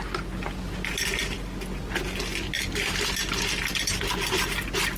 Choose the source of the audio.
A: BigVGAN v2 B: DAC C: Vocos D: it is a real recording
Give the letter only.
D